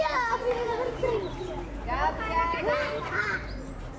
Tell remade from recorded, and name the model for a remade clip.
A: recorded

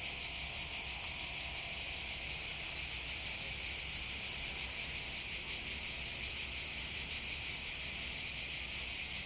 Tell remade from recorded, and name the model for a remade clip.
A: recorded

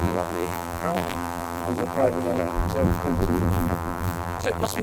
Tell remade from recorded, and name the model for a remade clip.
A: remade, vocoder, BigVGAN v2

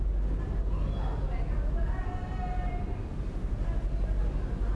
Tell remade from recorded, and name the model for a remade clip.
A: recorded